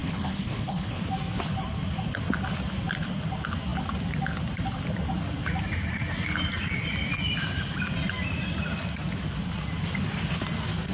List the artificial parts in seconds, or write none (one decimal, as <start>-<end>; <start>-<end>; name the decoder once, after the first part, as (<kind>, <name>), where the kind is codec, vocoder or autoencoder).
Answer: 0.0-1.0 (codec, HILCodec)